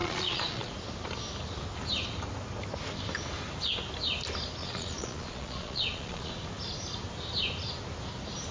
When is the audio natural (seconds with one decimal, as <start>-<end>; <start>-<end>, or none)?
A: 0.7-4.6; 6.3-8.5